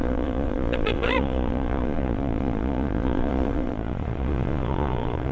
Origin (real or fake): fake